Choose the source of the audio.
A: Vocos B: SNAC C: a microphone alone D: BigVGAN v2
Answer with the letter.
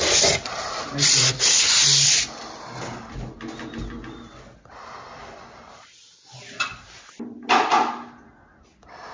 C